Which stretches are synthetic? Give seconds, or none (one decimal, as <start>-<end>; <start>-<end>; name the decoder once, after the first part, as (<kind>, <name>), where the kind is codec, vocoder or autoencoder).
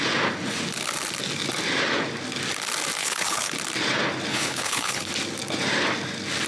3.0-3.5 (codec, HILCodec); 4.3-5.1